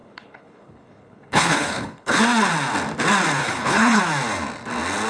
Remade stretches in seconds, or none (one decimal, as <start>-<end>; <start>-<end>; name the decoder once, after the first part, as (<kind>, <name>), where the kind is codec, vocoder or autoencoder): 0.0-2.2 (codec, HILCodec); 3.4-4.0